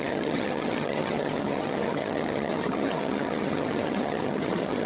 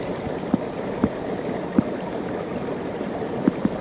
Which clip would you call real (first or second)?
second